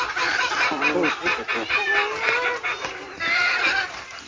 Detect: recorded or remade recorded